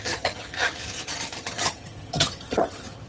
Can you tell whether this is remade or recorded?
remade